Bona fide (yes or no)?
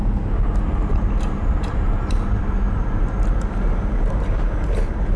no